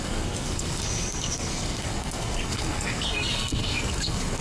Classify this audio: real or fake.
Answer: fake